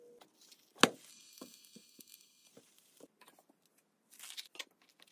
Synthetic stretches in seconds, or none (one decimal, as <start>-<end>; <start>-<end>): 1.1-2.5